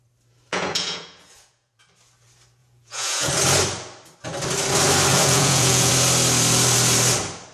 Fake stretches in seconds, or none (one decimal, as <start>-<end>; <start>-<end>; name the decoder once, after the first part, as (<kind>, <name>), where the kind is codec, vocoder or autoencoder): 0.5-1.8 (vocoder, Vocos); 2.6-3.3; 5.1-5.9